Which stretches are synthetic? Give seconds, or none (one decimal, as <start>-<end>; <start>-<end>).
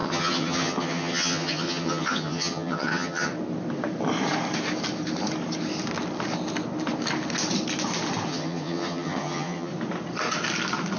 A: 0.0-3.3; 8.3-9.7